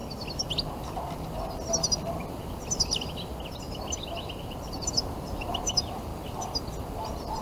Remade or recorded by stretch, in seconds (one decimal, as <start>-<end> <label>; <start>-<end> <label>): 0.0-4.4 recorded; 4.4-6.1 remade; 6.1-6.8 recorded; 6.8-7.4 remade